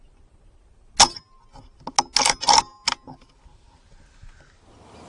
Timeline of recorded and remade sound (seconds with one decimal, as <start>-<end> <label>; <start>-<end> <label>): 0.0-5.1 recorded